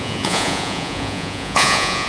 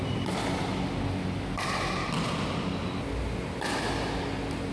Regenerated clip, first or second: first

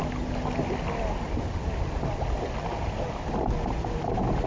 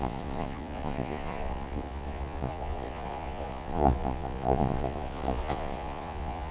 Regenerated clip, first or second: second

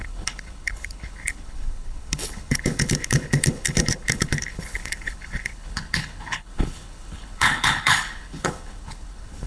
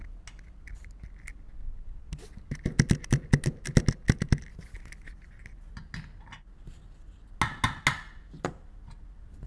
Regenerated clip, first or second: first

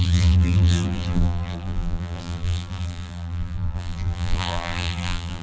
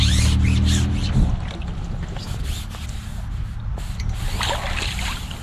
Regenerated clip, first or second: first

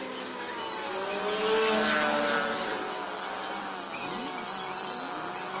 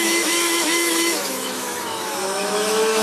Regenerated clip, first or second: second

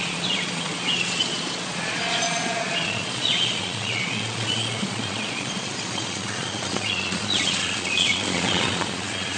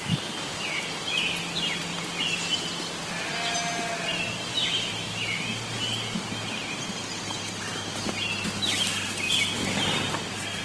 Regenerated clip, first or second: first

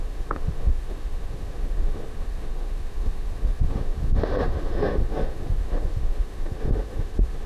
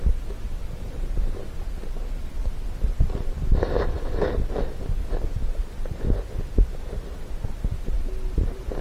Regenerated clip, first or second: first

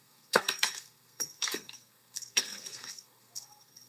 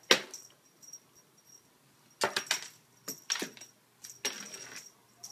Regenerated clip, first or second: first